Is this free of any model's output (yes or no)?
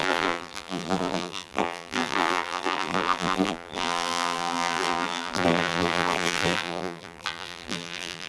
no